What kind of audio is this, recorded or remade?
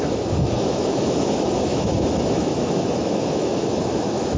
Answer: remade